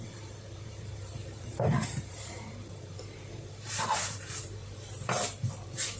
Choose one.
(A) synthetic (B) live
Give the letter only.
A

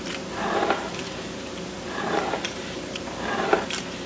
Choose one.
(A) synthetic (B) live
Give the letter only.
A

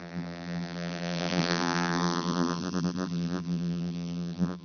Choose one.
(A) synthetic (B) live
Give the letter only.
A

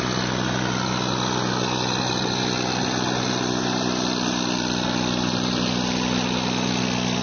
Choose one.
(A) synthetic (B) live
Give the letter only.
B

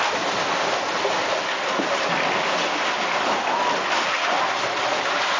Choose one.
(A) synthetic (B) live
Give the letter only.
B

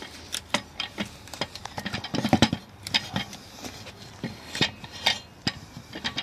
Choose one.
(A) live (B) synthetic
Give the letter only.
B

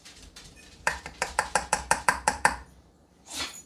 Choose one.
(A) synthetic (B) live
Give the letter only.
A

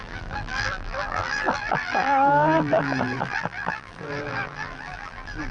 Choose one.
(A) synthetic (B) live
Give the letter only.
A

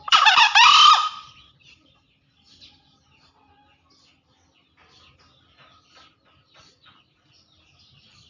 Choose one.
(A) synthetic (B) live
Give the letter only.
A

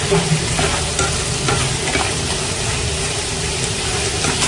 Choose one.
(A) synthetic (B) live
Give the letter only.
B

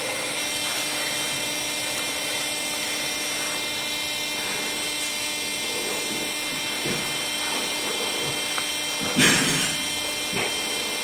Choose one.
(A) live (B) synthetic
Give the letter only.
A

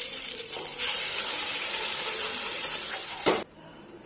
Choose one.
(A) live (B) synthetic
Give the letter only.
B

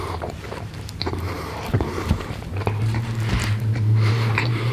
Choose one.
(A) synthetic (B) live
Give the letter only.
A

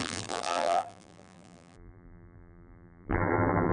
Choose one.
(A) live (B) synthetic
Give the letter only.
B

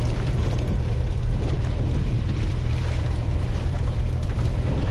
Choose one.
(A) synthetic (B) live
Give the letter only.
A